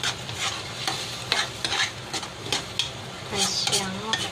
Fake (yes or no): no